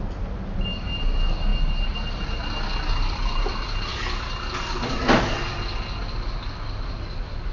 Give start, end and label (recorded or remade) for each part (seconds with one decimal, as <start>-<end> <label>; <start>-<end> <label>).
0.0-7.5 recorded